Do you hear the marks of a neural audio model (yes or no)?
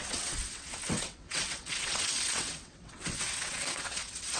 yes